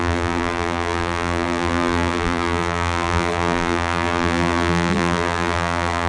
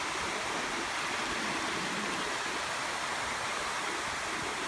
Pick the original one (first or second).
second